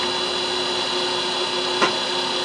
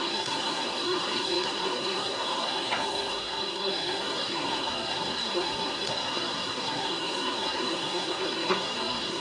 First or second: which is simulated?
second